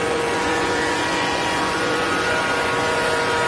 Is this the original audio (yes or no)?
no